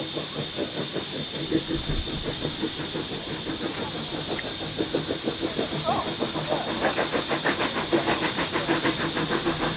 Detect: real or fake real